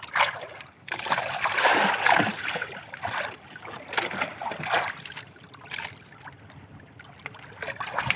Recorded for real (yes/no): yes